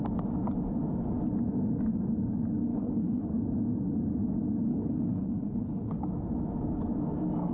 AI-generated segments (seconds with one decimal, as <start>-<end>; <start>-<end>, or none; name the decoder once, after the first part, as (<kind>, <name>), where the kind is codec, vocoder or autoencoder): 2.7-3.3 (codec, HILCodec); 4.7-6.0